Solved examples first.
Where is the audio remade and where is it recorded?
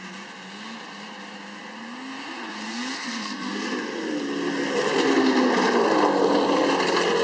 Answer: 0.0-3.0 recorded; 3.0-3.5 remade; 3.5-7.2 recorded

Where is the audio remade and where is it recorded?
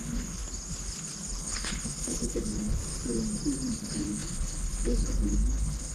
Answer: 0.0-0.4 remade; 0.4-1.4 recorded; 1.4-2.8 remade; 2.8-3.7 recorded; 3.7-5.9 remade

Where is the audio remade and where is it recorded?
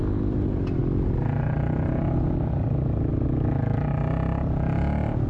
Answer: 0.0-5.3 recorded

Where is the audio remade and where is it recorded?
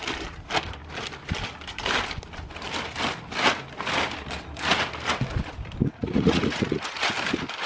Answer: 0.0-6.0 recorded; 6.0-7.1 remade; 7.1-7.7 recorded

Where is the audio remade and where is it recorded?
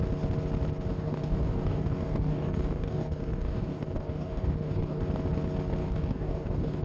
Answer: 0.0-0.9 recorded; 0.9-5.0 remade; 5.0-5.8 recorded; 5.8-6.8 remade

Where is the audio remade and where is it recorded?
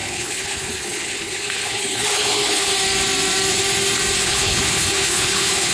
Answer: 0.0-2.7 remade; 2.7-4.2 recorded; 4.2-5.7 remade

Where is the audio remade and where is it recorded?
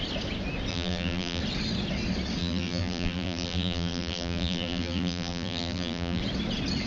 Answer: 0.0-0.7 recorded; 0.7-1.4 remade; 1.4-2.4 recorded; 2.4-6.2 remade; 6.2-6.9 recorded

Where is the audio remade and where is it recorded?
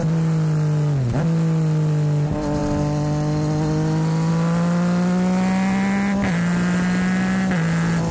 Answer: 0.0-8.1 recorded